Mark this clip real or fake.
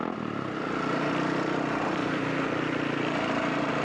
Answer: real